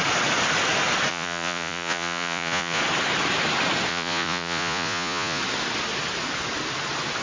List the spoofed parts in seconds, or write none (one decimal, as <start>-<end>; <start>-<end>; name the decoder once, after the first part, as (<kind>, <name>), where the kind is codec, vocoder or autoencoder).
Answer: 1.1-2.8 (vocoder, Vocos); 3.9-5.4